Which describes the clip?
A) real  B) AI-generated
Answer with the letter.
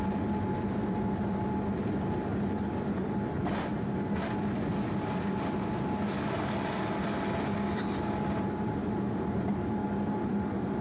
A